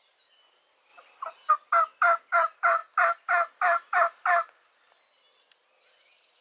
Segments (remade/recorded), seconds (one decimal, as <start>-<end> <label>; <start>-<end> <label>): 0.0-6.4 recorded